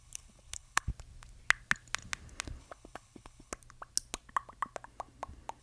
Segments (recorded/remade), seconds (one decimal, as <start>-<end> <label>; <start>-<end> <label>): 0.0-0.9 remade; 0.9-2.6 recorded; 2.6-3.5 remade; 3.5-5.6 recorded